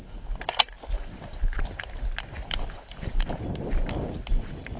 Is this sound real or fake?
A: real